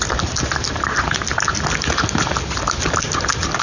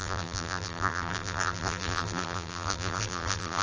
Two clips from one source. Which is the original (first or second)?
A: first